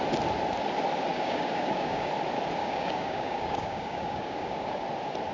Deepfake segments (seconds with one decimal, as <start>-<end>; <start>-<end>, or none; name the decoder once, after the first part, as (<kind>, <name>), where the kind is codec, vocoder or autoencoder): 1.1-2.1 (codec, DAC); 2.6-4.8